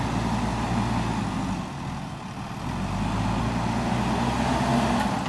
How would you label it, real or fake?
real